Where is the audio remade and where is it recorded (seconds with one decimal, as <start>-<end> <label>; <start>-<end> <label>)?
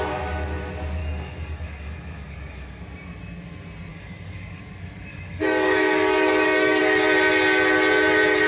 0.0-1.0 recorded; 1.0-2.8 remade; 2.8-3.9 recorded; 3.9-4.6 remade; 4.6-5.1 recorded; 5.1-6.8 remade; 6.8-8.5 recorded